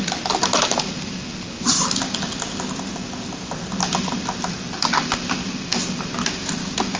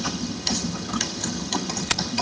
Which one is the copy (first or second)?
second